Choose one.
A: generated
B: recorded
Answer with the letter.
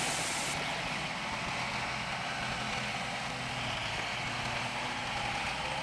B